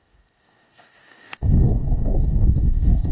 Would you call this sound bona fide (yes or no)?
no